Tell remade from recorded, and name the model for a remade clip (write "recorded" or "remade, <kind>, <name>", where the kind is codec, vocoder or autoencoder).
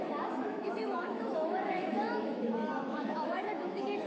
remade, autoencoder, DAC-VAE